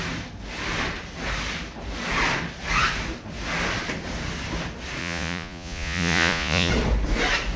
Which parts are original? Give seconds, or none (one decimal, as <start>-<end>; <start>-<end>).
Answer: 0.0-5.0; 6.7-7.6